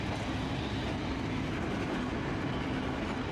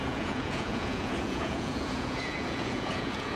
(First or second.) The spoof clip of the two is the second